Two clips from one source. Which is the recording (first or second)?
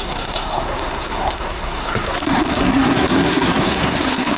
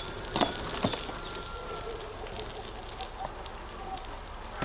second